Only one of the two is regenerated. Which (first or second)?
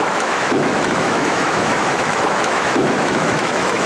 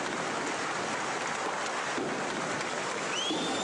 first